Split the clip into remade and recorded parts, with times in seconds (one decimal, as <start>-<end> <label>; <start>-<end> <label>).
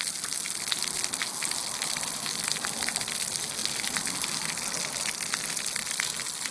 0.0-6.5 recorded